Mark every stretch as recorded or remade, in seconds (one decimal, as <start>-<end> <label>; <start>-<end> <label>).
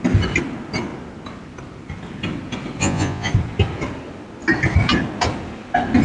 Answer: 0.0-2.8 recorded; 2.8-3.3 remade; 3.3-6.0 recorded